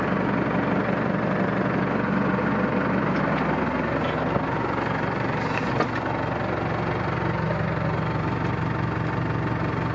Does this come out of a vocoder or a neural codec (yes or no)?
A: no